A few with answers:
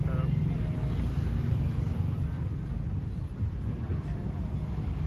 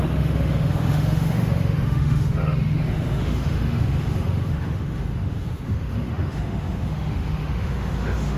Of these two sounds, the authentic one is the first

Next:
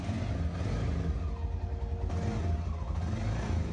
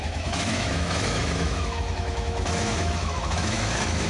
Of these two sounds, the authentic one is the first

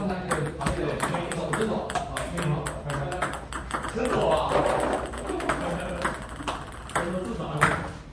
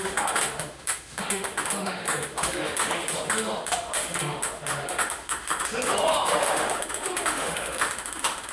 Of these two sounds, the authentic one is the first